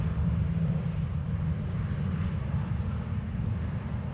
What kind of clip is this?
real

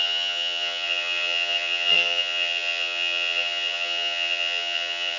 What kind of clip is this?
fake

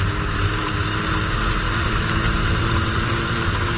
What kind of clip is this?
real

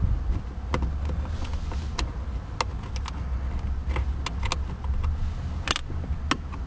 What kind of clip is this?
real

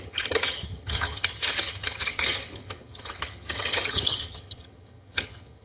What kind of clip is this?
fake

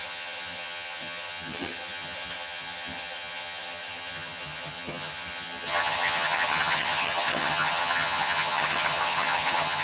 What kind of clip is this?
fake